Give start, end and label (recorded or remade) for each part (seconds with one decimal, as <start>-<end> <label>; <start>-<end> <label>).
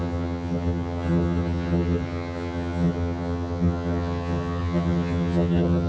0.0-5.9 remade